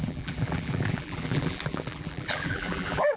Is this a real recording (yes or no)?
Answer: no